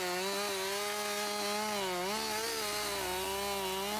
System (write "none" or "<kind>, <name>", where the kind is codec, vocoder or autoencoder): none